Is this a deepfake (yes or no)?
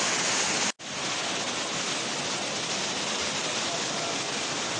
no